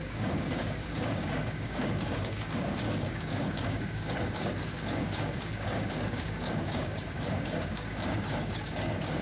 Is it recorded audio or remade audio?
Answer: remade